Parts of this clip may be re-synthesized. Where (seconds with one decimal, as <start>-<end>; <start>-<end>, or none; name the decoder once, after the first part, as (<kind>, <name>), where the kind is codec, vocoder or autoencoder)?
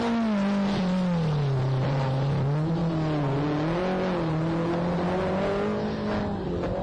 none